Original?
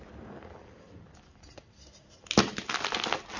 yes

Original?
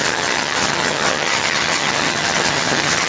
no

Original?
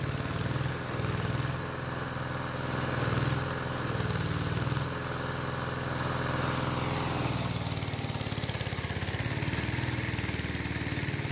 yes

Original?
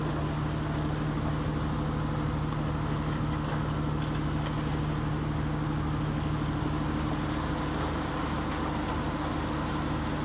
yes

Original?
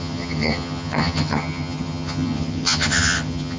no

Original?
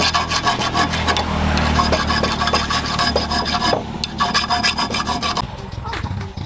yes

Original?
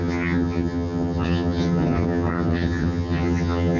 no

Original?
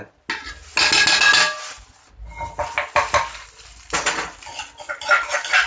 yes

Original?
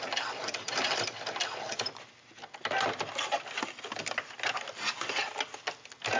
yes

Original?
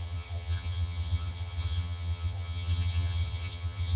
no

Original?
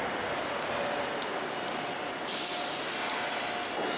yes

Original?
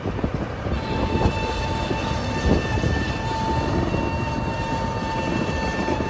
yes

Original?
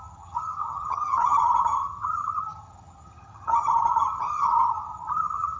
no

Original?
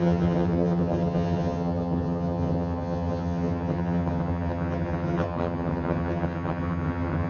no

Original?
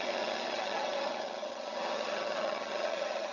no